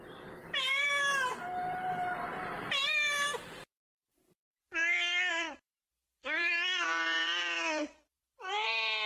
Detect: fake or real fake